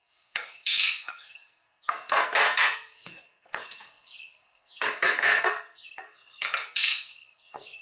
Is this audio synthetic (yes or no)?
yes